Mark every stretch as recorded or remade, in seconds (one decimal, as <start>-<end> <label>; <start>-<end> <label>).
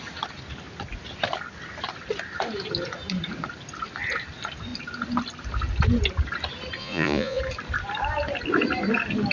0.0-6.8 recorded; 6.8-7.4 remade; 7.4-9.3 recorded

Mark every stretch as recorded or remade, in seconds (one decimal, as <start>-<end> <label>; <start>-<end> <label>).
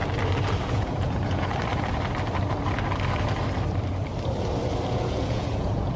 0.0-0.7 recorded; 0.7-1.5 remade; 1.5-5.1 recorded; 5.1-6.0 remade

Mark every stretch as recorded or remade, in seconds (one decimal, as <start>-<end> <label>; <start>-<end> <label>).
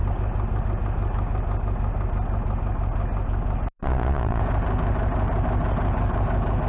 0.0-3.8 recorded; 3.8-4.4 remade; 4.4-6.7 recorded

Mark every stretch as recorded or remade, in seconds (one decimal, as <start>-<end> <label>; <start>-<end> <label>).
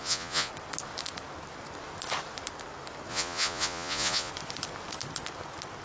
0.0-0.5 remade; 0.5-3.1 recorded; 3.1-4.3 remade; 4.3-5.8 recorded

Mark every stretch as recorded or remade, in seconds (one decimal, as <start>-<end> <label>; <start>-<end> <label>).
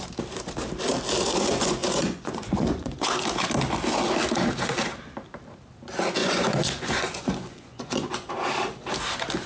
0.0-1.3 recorded; 1.3-3.2 remade; 3.2-6.2 recorded; 6.2-8.3 remade; 8.3-9.5 recorded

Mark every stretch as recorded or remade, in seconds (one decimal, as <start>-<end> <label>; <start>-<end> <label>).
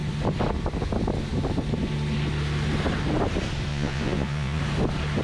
0.0-3.7 recorded; 3.7-4.6 remade; 4.6-5.2 recorded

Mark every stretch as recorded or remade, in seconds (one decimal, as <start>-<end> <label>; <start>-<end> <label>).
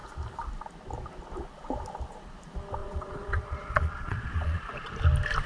0.0-2.8 recorded; 2.8-4.9 remade; 4.9-5.5 recorded